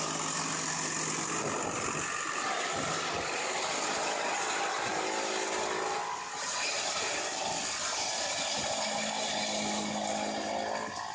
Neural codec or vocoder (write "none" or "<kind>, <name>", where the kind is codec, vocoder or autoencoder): none